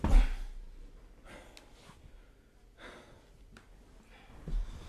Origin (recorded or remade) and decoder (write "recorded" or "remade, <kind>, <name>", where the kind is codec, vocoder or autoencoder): recorded